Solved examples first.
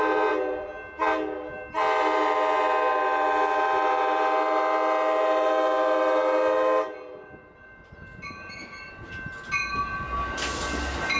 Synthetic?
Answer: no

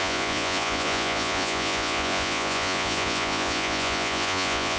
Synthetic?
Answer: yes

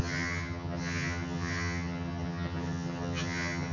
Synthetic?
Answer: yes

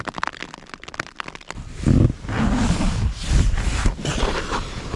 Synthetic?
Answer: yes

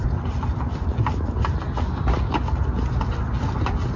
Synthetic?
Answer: no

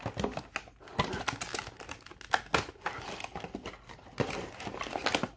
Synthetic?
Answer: no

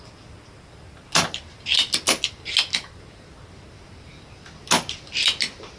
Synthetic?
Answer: no